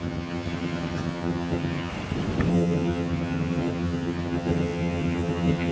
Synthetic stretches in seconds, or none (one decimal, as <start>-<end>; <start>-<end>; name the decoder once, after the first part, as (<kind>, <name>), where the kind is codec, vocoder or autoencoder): 0.0-1.9 (vocoder, HiFi-GAN); 2.5-5.7